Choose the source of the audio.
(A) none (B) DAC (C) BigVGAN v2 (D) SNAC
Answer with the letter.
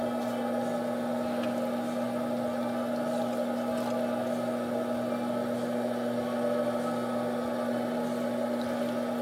A